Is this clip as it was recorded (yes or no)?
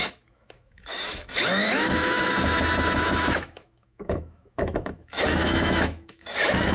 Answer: no